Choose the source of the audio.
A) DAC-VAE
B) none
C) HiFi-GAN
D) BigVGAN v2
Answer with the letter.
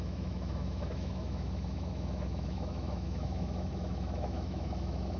A